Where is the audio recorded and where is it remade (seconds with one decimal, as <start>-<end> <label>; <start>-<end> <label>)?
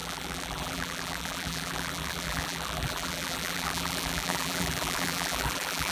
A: 0.0-5.9 remade